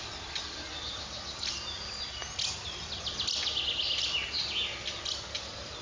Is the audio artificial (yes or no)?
no